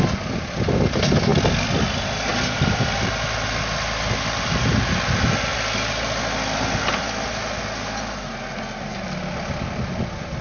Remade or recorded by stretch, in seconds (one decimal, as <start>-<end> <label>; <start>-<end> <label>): 0.0-1.3 recorded; 1.3-4.6 remade; 4.6-10.4 recorded